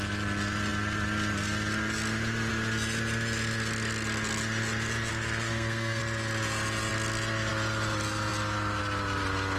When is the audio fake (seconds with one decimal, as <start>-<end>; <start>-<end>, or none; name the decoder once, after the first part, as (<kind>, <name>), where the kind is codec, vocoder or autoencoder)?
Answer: 5.1-6.0 (codec, SNAC)